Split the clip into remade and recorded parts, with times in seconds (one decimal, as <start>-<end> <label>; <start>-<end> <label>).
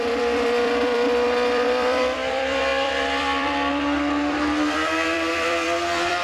0.0-6.2 remade